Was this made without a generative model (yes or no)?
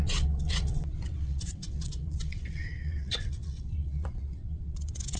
no